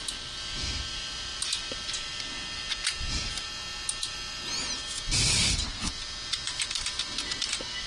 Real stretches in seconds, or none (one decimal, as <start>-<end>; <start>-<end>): 0.0-5.3; 5.9-7.9